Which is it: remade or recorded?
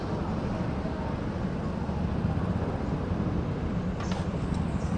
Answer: recorded